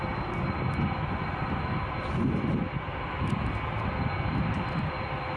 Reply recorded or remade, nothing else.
recorded